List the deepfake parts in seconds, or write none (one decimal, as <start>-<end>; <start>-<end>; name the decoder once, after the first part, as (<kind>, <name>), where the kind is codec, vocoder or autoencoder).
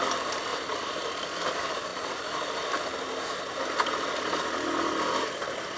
none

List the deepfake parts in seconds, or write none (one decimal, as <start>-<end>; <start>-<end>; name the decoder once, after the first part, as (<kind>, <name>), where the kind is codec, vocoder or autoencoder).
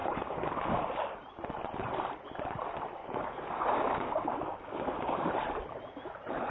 0.0-1.2 (codec, DAC); 3.0-5.3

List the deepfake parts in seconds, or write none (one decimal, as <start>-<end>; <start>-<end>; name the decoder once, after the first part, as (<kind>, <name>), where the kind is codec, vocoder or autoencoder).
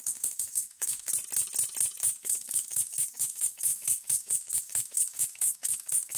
0.0-1.1 (codec, DAC); 2.0-6.2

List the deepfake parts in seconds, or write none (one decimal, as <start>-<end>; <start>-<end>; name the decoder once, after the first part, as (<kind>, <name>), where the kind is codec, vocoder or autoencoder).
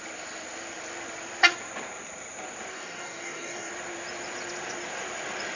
2.7-3.7 (codec, DAC)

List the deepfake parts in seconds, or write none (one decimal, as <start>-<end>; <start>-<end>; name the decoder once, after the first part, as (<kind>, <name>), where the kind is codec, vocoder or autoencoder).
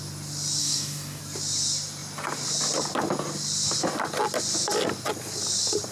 0.6-1.2 (codec, DAC)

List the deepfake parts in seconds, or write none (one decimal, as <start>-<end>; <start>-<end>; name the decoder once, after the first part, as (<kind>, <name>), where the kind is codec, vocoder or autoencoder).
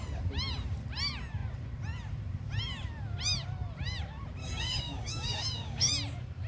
4.4-5.9 (codec, DAC)